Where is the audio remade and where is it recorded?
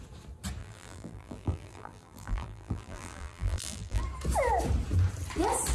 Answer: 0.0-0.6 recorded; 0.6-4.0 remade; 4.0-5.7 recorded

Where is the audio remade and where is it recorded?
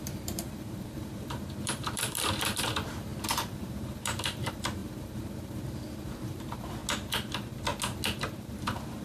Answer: 0.0-6.8 remade; 6.8-8.4 recorded; 8.4-9.0 remade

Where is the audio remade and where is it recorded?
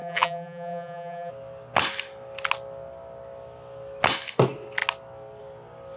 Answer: 0.0-1.3 remade; 1.3-6.0 recorded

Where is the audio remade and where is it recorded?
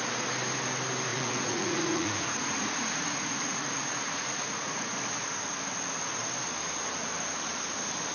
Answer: 0.0-1.1 recorded; 1.1-5.0 remade; 5.0-8.1 recorded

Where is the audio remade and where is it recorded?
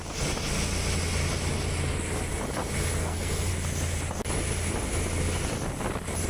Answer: 0.0-3.0 recorded; 3.0-3.5 remade; 3.5-6.3 recorded